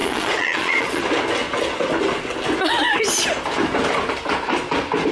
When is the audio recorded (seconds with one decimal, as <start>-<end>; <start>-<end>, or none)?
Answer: 1.0-5.1